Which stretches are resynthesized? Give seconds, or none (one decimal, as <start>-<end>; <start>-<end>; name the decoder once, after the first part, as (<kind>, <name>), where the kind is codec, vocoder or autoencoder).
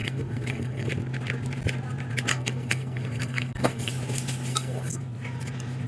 0.0-0.9 (codec, SNAC); 2.3-3.9; 4.5-5.0